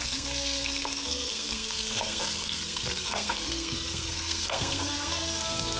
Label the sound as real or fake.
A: fake